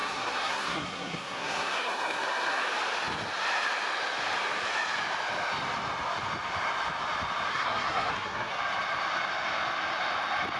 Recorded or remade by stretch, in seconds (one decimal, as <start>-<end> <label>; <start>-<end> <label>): 0.0-2.6 remade; 2.6-7.5 recorded; 7.5-8.6 remade; 8.6-10.6 recorded